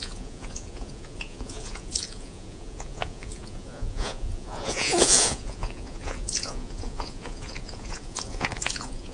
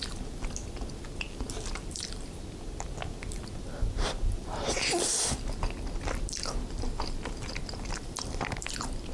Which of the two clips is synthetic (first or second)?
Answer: first